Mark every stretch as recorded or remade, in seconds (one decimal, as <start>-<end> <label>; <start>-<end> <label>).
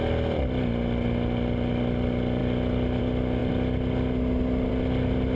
0.0-5.4 recorded